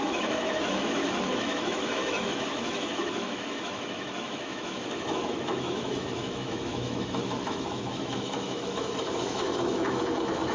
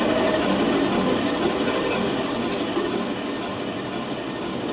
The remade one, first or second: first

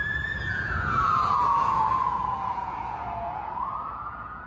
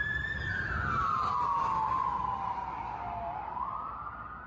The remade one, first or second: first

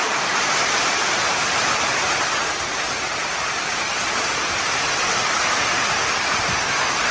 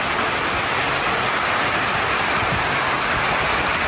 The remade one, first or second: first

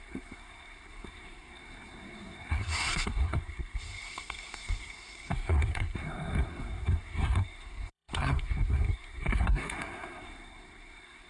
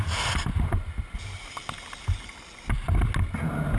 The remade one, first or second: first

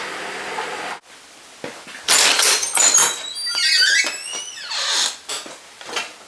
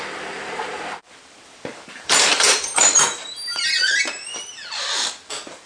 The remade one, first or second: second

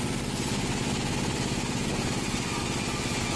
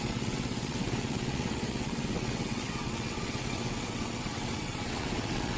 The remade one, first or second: second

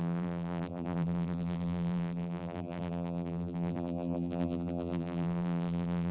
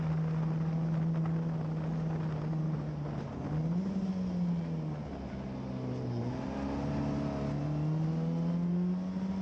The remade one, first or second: first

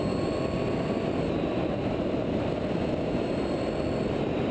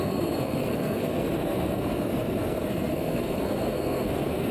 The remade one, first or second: second